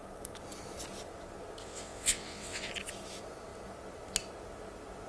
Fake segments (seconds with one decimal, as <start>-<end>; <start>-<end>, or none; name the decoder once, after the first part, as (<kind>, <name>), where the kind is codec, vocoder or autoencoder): 1.6-2.7 (vocoder, WaveNeXt)

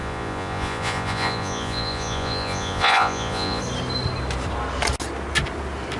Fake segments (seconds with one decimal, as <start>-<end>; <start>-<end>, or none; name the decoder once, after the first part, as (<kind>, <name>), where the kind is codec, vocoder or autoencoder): 0.0-3.6 (vocoder, Vocos)

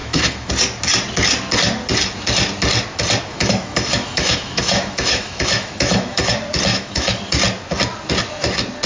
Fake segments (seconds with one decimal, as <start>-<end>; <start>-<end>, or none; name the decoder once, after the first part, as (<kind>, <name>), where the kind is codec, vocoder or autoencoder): 0.0-0.5 (autoencoder, DAC-VAE); 3.3-6.3; 6.7-7.2

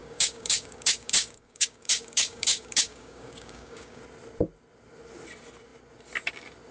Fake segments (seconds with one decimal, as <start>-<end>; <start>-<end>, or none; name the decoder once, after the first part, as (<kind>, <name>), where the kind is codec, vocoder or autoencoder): 0.0-4.0 (codec, DAC)

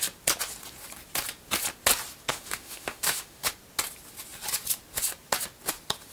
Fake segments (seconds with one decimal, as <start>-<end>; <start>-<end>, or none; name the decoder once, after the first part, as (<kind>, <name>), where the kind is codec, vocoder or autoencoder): 2.3-3.5 (autoencoder, DAC-VAE)

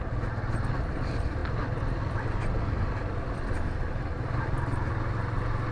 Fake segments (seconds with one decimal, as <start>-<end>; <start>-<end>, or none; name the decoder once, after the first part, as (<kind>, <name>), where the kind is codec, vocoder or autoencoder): none

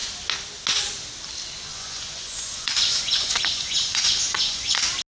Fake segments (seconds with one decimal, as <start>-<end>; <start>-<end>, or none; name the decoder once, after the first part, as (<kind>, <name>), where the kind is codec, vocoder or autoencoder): 1.7-4.8 (vocoder, Vocos)

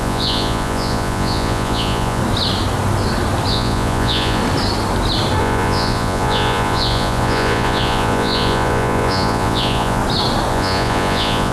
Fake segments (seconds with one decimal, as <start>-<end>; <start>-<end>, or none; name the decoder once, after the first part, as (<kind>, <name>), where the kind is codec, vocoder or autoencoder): 0.0-2.2 (vocoder, Vocos); 3.5-4.4; 5.4-10.0; 10.5-11.5